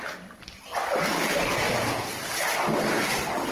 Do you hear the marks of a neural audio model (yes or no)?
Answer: no